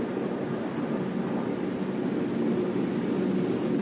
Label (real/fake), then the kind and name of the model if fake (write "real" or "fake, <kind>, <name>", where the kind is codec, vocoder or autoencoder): real